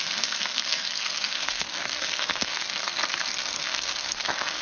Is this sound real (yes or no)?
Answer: no